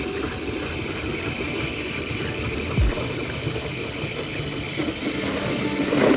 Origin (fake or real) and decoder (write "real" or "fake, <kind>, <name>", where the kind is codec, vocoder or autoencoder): real